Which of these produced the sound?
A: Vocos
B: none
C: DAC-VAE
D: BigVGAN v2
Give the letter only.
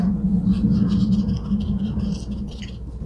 B